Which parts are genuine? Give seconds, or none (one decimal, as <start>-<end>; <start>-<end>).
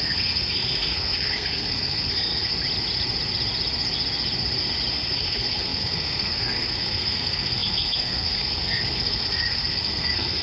2.5-4.9